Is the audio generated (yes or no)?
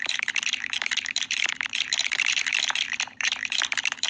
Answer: yes